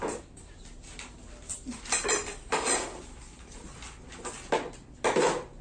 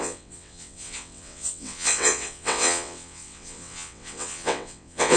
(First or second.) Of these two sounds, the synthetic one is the second